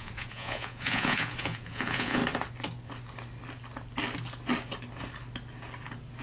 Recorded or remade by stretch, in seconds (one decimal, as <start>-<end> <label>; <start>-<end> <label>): 0.0-2.2 remade; 2.2-6.2 recorded